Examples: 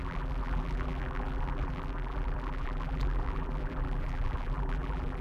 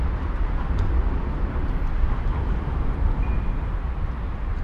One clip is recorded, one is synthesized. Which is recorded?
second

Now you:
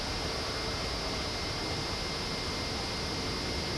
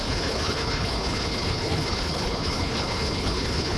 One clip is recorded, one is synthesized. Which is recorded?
first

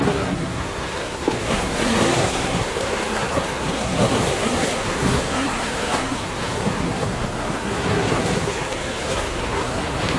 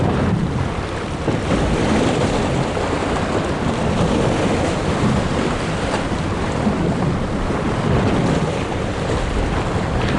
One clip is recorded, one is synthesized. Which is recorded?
second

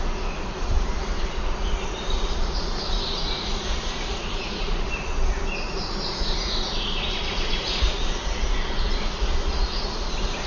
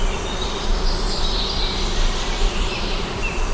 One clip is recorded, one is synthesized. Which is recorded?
second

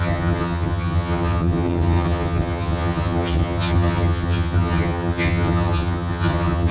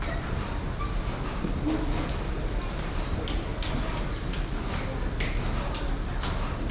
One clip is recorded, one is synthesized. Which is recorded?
second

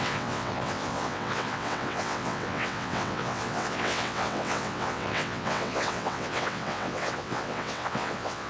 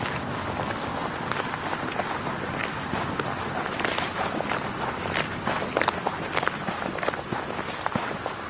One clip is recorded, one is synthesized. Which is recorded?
second